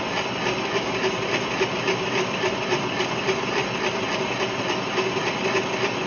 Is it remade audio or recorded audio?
recorded